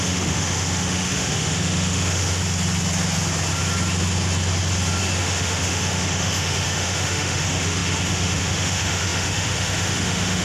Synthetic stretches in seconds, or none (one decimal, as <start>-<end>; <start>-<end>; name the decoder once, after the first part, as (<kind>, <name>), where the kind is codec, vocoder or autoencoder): 0.0-2.4 (autoencoder, DAC-VAE); 5.2-10.4